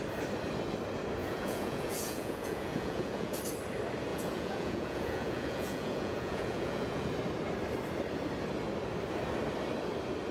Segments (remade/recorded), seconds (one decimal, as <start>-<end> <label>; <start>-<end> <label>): 0.0-1.2 recorded; 1.2-3.4 remade; 3.4-4.1 recorded; 4.1-7.1 remade; 7.1-10.3 recorded